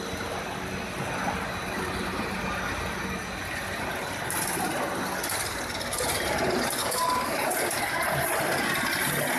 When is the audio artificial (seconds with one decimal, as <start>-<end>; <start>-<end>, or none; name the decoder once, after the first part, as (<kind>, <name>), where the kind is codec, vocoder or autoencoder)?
6.8-7.5 (codec, DAC)